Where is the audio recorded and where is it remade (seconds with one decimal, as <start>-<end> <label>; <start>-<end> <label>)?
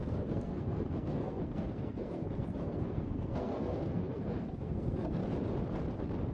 0.0-5.2 remade; 5.2-6.3 recorded